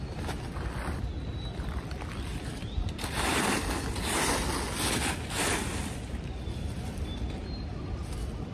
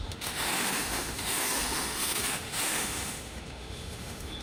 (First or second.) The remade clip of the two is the second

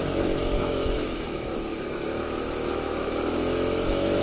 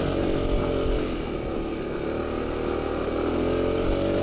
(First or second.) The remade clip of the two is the first